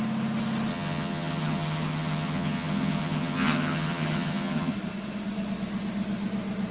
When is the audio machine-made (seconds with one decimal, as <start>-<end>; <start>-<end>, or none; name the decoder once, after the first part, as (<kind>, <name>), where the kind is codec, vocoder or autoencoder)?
0.7-4.7 (vocoder, HiFi-GAN)